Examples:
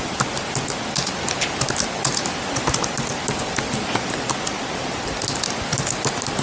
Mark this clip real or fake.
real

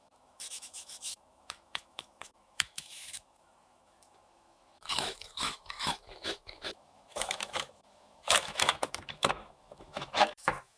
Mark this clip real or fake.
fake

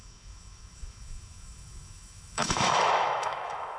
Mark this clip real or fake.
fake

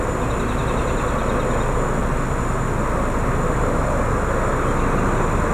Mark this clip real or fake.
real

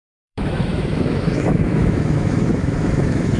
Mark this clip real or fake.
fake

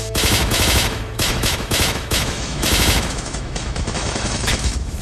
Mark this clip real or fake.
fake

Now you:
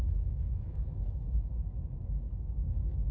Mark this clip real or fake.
fake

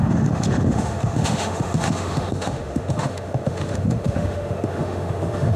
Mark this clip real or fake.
fake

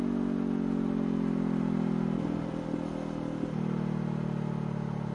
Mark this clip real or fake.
real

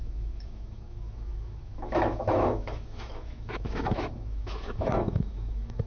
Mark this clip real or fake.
fake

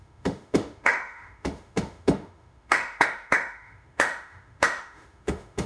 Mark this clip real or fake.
fake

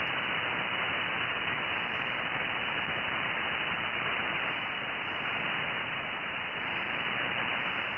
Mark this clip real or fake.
real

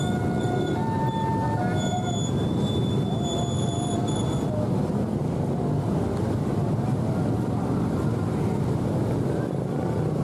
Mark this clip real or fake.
real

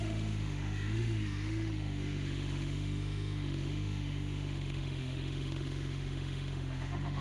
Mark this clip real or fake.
fake